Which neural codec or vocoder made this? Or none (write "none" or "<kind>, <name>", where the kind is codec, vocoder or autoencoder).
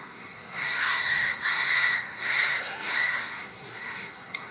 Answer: codec, SNAC